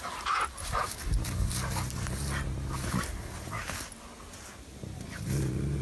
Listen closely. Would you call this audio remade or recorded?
recorded